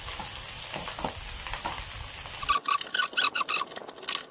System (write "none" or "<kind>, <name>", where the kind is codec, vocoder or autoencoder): none